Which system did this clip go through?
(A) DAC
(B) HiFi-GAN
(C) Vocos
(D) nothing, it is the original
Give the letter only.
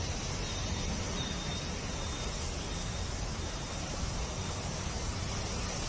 D